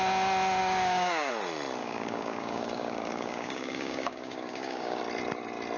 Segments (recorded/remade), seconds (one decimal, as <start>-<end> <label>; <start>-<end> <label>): 0.0-0.6 recorded; 0.6-1.3 remade; 1.3-1.8 recorded; 1.8-5.0 remade; 5.0-5.8 recorded